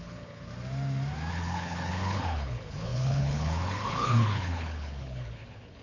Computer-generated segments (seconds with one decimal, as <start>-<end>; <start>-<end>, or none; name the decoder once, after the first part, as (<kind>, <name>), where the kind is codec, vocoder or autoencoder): 0.0-0.5 (codec, HILCodec); 1.3-5.8